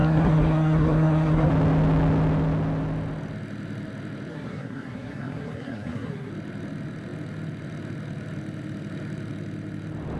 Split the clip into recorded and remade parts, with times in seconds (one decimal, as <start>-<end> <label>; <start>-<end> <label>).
0.0-1.5 remade; 1.5-4.3 recorded; 4.3-6.3 remade; 6.3-10.2 recorded